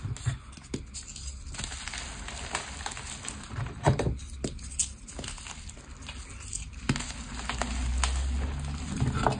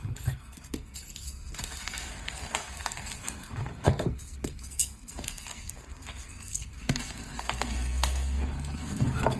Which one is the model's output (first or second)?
second